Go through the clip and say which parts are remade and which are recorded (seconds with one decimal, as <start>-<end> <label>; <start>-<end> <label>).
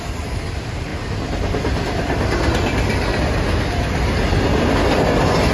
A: 0.0-5.5 recorded